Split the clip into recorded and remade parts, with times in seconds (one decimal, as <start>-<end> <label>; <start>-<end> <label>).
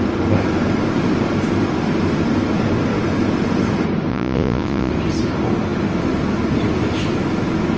0.0-4.1 recorded; 4.1-4.9 remade; 4.9-7.8 recorded